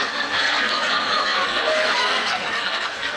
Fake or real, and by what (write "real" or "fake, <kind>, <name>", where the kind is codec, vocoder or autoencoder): fake, codec, SNAC